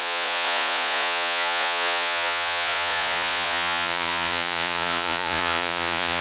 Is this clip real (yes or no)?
no